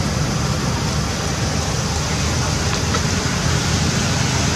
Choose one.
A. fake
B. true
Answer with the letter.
B